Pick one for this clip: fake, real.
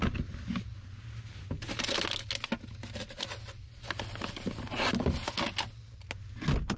real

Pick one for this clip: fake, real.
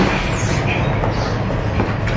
real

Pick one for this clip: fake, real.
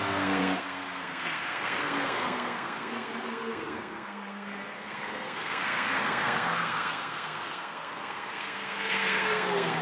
fake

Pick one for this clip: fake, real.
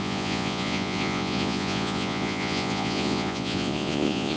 fake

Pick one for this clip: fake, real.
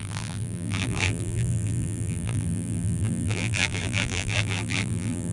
fake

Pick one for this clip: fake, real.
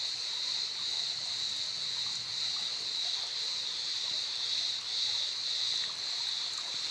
real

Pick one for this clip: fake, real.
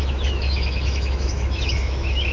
fake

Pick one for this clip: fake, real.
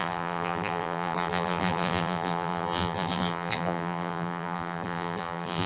fake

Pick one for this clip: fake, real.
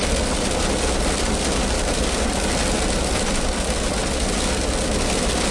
real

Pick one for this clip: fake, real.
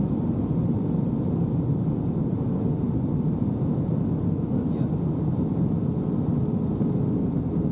real